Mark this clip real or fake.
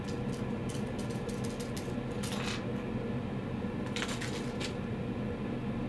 real